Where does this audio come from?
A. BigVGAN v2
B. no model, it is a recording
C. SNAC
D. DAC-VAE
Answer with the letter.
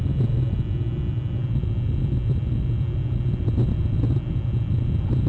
B